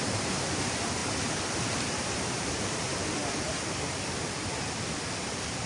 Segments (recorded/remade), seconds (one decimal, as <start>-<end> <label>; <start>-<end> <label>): 0.0-1.0 remade; 1.0-2.2 recorded; 2.2-3.2 remade; 3.2-5.7 recorded